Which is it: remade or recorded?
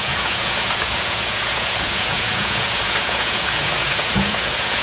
remade